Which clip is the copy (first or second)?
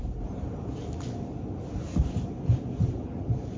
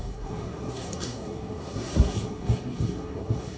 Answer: second